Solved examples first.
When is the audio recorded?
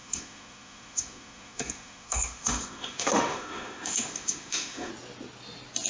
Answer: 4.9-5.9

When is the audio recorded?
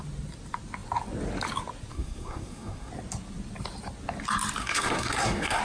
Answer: 0.0-1.9; 2.9-4.6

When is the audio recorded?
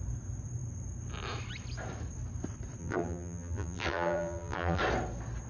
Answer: 0.0-2.8; 4.8-5.5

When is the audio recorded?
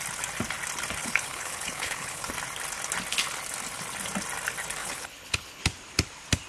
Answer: 0.0-1.0; 2.3-4.8; 5.6-6.5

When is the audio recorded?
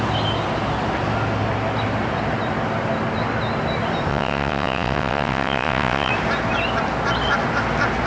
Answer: 0.0-4.1; 6.1-8.1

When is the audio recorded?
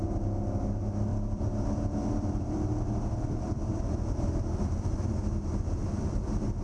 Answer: 0.0-1.1; 5.1-6.6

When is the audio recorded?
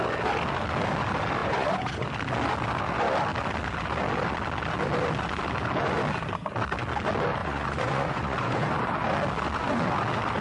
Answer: 0.0-1.4; 2.1-7.4; 8.7-10.4